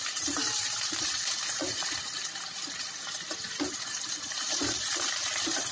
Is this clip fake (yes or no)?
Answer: no